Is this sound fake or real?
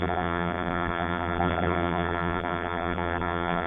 fake